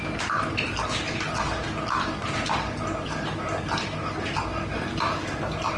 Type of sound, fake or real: real